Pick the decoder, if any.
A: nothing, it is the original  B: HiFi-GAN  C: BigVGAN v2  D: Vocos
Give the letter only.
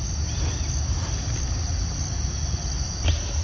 A